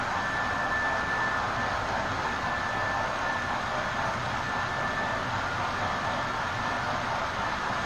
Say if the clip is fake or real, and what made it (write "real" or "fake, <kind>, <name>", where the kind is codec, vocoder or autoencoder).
real